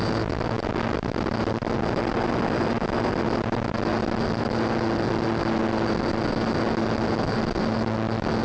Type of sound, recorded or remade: recorded